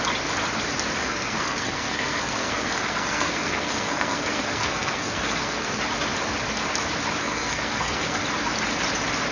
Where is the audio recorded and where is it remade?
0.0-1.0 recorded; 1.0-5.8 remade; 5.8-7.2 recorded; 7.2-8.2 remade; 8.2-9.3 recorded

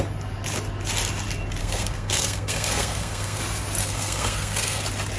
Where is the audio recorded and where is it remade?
0.0-1.6 recorded; 1.6-3.4 remade; 3.4-3.8 recorded; 3.8-4.8 remade; 4.8-5.2 recorded

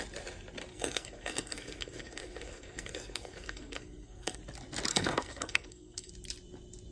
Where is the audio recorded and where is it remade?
0.0-0.7 recorded; 0.7-4.4 remade; 4.4-4.9 recorded; 4.9-6.1 remade; 6.1-6.9 recorded

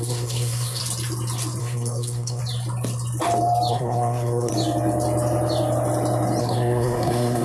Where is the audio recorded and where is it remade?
0.0-0.8 remade; 0.8-1.6 recorded; 1.6-2.4 remade; 2.4-3.7 recorded; 3.7-4.5 remade; 4.5-6.4 recorded; 6.4-7.4 remade

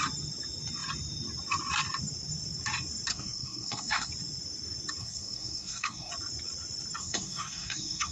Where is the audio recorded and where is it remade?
0.0-3.1 recorded; 3.1-4.1 remade; 4.1-5.0 recorded; 5.0-6.1 remade; 6.1-7.0 recorded; 7.0-8.1 remade

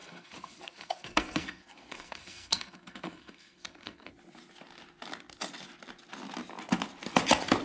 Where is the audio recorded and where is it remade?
0.0-4.1 remade; 4.1-7.6 recorded

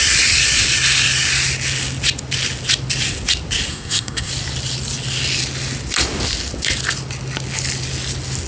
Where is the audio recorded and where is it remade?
0.0-3.7 recorded; 3.7-4.3 remade; 4.3-8.5 recorded

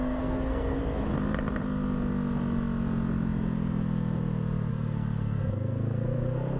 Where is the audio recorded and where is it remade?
0.0-0.8 remade; 0.8-4.7 recorded; 4.7-6.6 remade